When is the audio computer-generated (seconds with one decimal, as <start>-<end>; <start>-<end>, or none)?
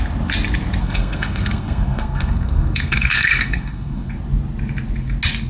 0.8-4.1